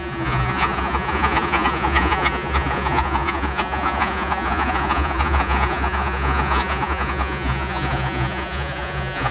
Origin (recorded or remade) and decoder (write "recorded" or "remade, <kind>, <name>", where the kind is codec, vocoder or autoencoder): remade, vocoder, Vocos